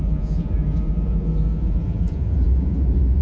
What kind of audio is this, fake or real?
fake